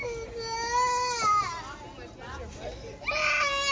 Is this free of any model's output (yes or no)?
yes